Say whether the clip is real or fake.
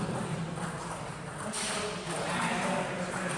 fake